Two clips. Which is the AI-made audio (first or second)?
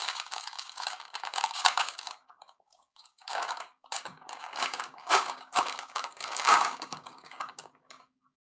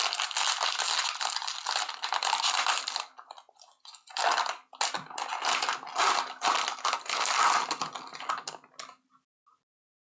first